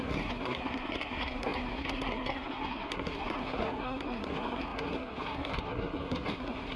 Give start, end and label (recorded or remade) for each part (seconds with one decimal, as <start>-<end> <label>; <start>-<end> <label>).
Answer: 0.0-6.8 remade